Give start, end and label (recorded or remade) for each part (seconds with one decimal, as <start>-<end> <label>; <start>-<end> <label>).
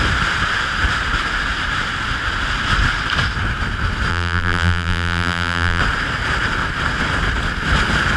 0.0-4.1 recorded; 4.1-5.8 remade; 5.8-8.2 recorded